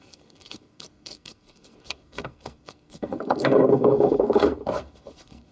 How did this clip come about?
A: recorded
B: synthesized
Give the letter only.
B